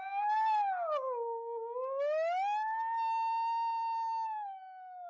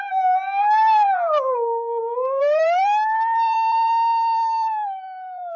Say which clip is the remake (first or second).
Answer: second